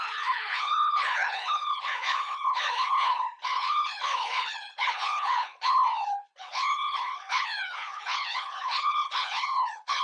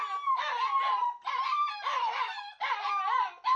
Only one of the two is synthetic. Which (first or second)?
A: first